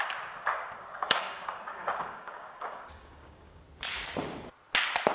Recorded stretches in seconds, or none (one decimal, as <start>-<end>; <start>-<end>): 0.0-0.5; 3.6-5.1